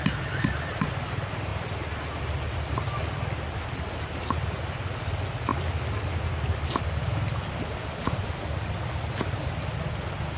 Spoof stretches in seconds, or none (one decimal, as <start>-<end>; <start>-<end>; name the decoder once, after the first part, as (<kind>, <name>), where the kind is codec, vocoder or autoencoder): none